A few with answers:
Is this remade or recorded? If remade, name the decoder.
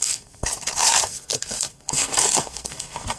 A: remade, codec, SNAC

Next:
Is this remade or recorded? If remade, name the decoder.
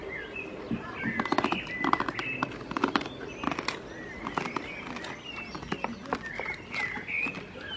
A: recorded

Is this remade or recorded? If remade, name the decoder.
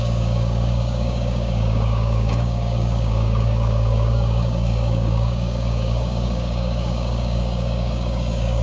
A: remade, codec, DAC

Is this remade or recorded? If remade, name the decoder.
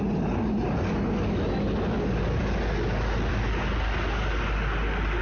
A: recorded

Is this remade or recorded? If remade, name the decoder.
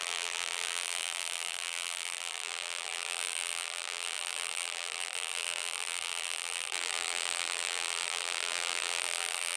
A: remade, vocoder, BigVGAN v2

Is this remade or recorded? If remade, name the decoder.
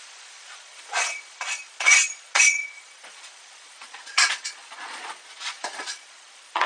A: remade, vocoder, Vocos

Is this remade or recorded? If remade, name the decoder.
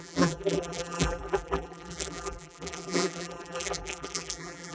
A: remade, vocoder, BigVGAN v2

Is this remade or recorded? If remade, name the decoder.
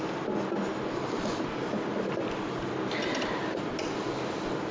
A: recorded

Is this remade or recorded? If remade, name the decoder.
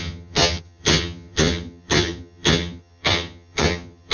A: remade, vocoder, HiFi-GAN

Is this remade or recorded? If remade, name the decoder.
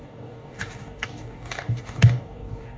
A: remade, codec, DAC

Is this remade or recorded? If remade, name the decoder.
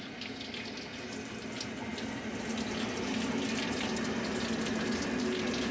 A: recorded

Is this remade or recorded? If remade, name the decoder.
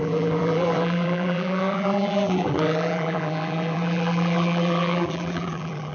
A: remade, vocoder, BigVGAN v2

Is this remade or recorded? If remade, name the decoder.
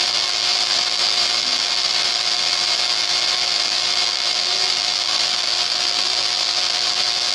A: remade, vocoder, BigVGAN v2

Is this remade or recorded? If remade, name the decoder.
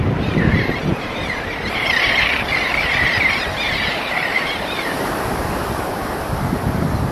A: remade, vocoder, BigVGAN v2